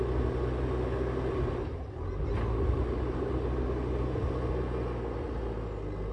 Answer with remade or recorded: recorded